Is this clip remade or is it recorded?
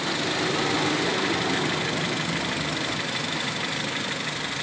recorded